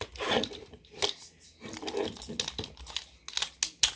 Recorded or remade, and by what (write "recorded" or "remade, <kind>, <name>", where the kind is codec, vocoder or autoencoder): recorded